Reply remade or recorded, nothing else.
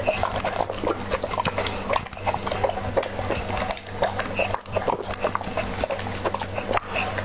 recorded